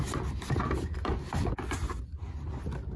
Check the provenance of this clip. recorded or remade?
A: recorded